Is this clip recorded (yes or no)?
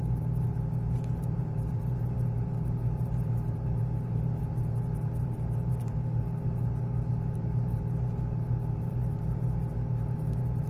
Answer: no